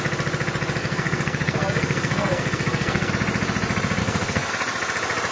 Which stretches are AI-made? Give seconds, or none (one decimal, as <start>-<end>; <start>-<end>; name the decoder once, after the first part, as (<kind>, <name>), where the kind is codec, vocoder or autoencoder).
0.8-3.1 (codec, SNAC); 4.0-4.5